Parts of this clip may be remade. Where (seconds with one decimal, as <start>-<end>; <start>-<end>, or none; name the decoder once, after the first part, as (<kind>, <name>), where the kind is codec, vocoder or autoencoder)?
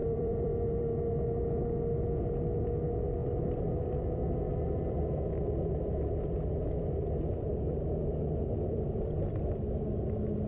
0.0-0.8 (vocoder, BigVGAN v2); 3.2-5.0